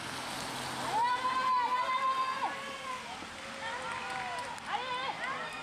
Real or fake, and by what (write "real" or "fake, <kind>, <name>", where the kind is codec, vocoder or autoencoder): real